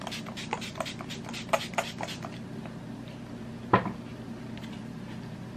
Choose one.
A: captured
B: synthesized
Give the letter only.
A